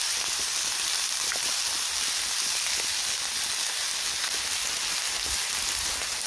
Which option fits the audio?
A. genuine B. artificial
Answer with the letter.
A